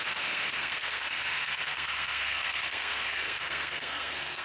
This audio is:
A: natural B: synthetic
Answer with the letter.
B